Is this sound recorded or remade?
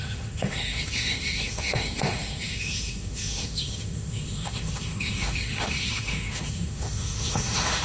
remade